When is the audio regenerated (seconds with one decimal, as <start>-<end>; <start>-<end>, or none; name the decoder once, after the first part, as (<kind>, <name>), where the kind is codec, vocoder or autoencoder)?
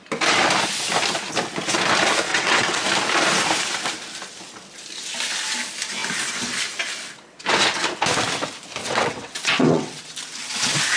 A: 2.3-2.8 (vocoder, WaveNeXt); 8.8-10.0